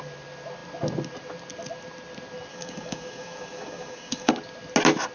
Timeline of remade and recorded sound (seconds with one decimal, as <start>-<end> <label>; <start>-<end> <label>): 0.0-2.5 recorded; 2.5-4.3 remade; 4.3-5.1 recorded